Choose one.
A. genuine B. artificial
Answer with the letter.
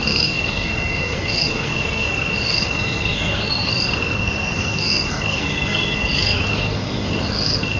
B